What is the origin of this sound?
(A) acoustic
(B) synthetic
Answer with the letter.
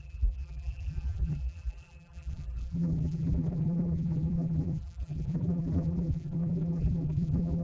B